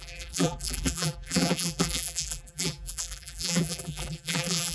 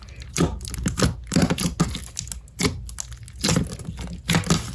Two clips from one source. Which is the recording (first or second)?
second